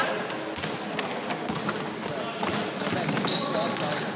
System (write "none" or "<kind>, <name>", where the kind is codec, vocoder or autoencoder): none